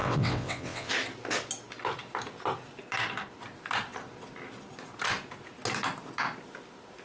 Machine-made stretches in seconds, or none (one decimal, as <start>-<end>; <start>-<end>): 0.0-0.9